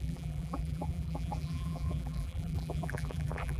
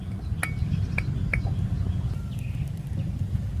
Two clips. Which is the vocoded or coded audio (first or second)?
first